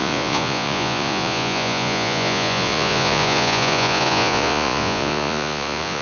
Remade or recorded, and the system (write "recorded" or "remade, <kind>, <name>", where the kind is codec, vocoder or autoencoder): remade, vocoder, Vocos